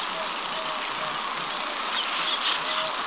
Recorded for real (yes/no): yes